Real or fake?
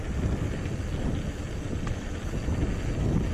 real